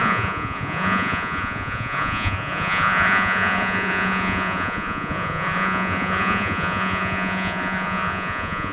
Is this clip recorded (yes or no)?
no